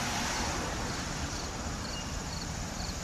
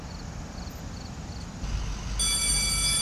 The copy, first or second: first